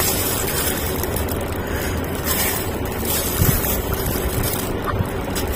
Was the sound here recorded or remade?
remade